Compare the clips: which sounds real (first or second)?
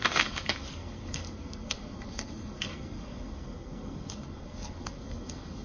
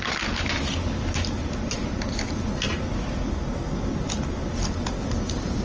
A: second